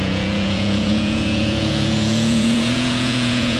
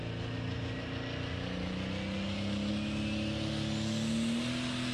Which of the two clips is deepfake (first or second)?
first